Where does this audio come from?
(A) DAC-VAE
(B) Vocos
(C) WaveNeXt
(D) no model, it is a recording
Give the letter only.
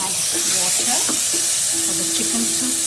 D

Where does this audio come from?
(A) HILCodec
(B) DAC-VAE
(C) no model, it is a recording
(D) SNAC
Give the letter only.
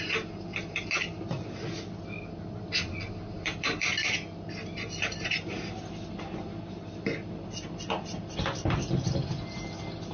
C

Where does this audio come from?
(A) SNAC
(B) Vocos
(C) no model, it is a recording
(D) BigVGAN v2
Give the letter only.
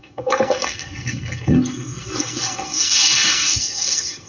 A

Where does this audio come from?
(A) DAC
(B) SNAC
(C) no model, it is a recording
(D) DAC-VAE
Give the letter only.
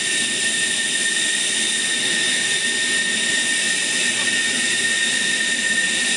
C